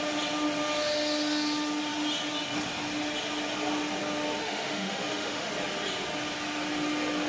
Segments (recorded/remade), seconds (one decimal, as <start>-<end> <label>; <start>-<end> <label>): 0.0-4.4 recorded; 4.4-5.5 remade; 5.5-7.3 recorded